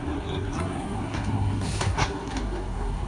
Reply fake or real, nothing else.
fake